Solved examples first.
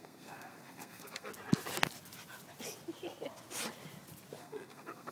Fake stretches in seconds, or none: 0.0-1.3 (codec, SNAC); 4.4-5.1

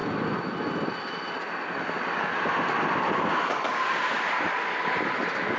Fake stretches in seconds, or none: none

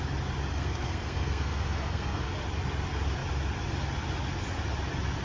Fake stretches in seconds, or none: 0.5-2.3 (codec, SNAC)

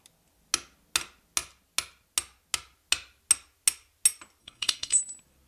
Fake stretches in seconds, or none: 4.4-5.0 (codec, SNAC)